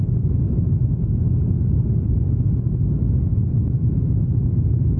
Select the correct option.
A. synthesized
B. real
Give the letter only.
B